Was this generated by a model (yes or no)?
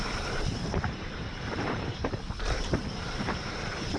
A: yes